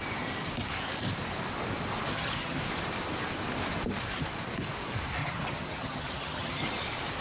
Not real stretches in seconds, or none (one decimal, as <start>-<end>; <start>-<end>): 2.1-2.6; 5.2-6.7